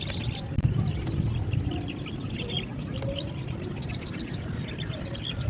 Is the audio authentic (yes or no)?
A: yes